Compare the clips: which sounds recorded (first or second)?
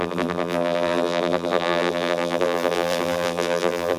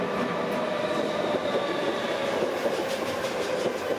second